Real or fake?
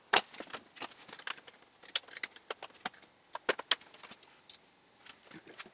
real